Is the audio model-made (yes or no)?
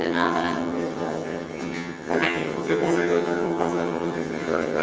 yes